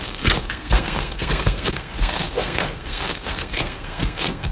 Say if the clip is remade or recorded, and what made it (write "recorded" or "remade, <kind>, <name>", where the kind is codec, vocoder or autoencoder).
remade, codec, SNAC